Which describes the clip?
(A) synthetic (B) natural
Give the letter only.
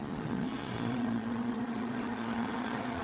A